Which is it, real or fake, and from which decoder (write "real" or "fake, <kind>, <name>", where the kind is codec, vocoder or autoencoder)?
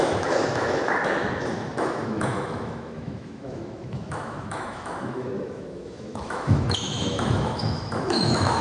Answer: fake, autoencoder, DAC-VAE